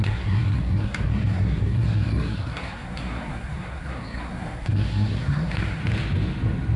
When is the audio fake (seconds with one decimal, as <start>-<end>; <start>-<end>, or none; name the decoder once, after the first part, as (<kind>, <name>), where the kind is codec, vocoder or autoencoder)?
0.0-5.8 (codec, SNAC)